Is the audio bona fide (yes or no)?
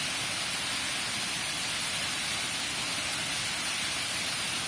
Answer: yes